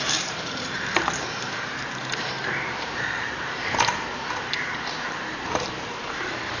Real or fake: fake